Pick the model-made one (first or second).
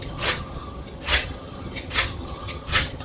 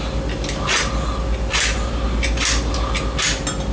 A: first